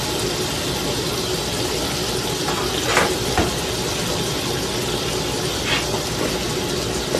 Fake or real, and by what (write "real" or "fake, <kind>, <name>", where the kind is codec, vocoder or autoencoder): real